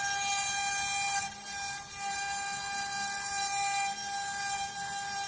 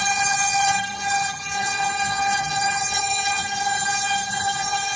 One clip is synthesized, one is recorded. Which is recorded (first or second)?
first